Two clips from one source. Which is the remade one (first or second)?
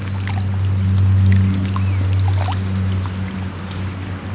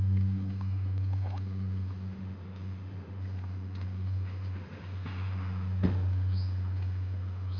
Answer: second